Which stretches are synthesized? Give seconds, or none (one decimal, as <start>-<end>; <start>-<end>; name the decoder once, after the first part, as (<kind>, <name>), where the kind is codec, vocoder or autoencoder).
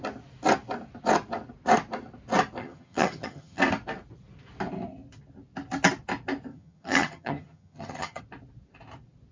2.6-3.6 (vocoder, HiFi-GAN); 6.5-8.2